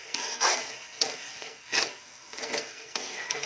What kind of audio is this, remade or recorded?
remade